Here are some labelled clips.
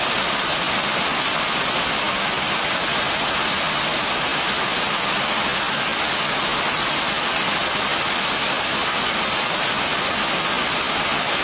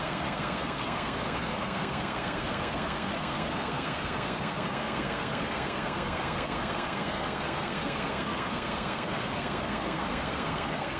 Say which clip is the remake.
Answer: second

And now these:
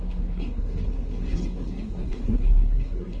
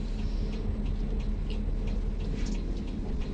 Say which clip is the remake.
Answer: first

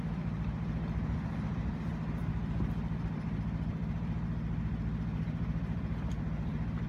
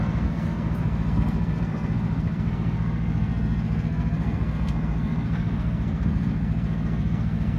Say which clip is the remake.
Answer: second